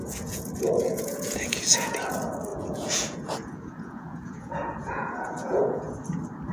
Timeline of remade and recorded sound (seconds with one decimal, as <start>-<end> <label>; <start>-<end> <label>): 0.0-2.0 remade; 2.0-2.5 recorded; 2.5-5.9 remade; 5.9-6.5 recorded